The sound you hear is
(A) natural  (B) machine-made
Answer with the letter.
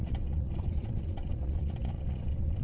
B